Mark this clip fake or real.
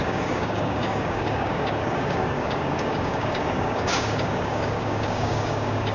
fake